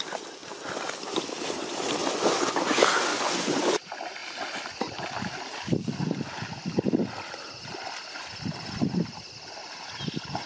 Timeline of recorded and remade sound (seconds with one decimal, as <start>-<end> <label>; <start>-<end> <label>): 0.0-2.0 recorded; 2.0-2.5 remade; 2.5-3.1 recorded; 3.1-3.8 remade; 3.8-10.5 recorded